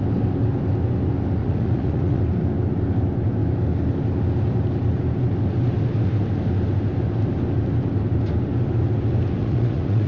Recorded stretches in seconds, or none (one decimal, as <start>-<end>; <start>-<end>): 0.0-1.4; 2.2-9.4

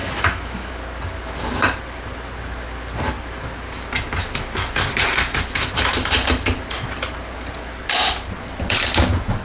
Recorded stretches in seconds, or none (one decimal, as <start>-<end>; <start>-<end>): 0.7-4.2; 5.7-9.4

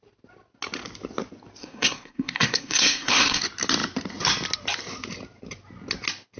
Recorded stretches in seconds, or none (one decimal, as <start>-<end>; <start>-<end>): 0.0-1.6; 3.4-6.4

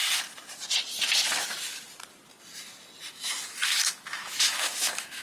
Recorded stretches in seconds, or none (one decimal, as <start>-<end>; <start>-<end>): 0.0-3.1

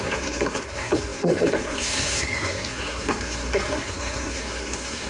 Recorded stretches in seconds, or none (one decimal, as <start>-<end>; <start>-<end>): none